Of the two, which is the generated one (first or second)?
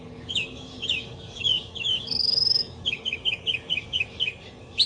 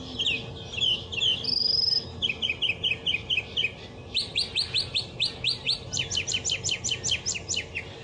first